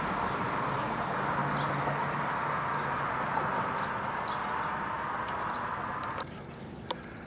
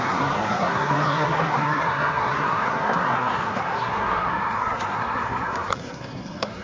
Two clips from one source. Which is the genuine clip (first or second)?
first